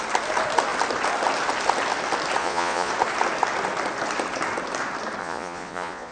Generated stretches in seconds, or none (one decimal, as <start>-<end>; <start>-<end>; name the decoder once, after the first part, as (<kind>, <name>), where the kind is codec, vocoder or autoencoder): 2.4-2.9 (vocoder, Vocos); 5.2-6.1